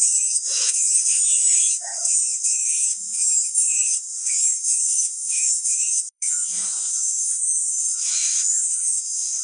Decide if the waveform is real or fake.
fake